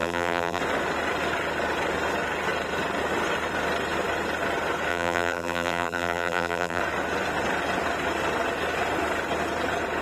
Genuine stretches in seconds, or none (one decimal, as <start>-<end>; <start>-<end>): 0.6-4.9; 6.8-10.0